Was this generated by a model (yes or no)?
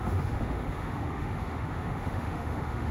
yes